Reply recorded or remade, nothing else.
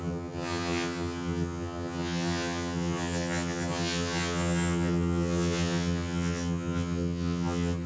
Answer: remade